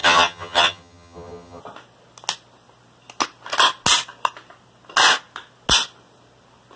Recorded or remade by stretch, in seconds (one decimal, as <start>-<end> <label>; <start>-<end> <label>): 0.0-1.6 remade; 1.6-6.8 recorded